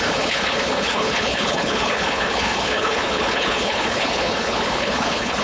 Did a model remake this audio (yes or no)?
yes